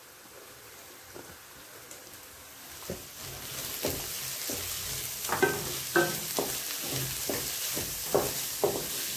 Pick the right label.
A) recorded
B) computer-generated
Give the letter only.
A